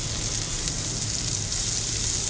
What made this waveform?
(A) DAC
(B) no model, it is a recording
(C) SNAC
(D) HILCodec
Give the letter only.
B